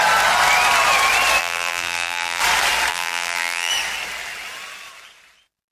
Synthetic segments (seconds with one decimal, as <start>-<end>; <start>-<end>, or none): 1.4-2.4; 2.9-3.7